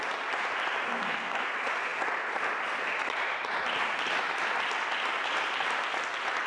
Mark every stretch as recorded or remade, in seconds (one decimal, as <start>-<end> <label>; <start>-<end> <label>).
0.0-0.9 recorded; 0.9-1.5 remade; 1.5-6.5 recorded